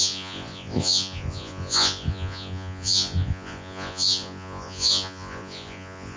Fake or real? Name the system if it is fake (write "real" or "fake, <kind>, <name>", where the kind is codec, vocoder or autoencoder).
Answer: fake, vocoder, Vocos